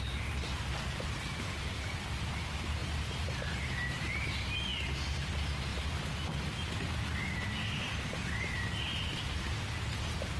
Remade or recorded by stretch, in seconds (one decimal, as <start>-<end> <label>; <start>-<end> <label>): 0.0-2.8 recorded; 2.8-4.3 remade; 4.3-10.4 recorded